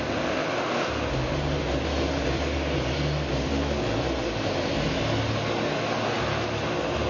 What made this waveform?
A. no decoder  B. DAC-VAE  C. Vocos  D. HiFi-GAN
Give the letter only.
A